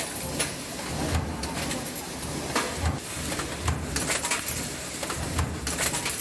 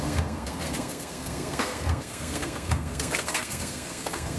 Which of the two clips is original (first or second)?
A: first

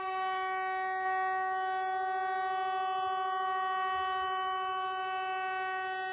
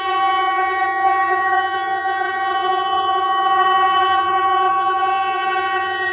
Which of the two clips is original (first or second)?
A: first